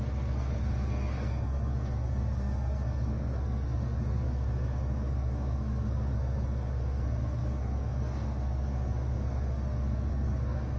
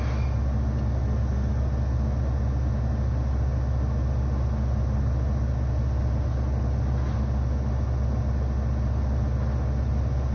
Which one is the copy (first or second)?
first